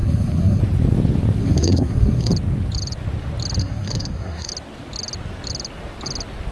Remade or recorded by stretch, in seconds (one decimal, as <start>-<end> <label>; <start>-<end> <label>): 0.0-0.6 remade; 0.6-1.4 recorded; 1.4-2.3 remade; 2.3-3.6 recorded; 3.6-4.5 remade; 4.5-6.5 recorded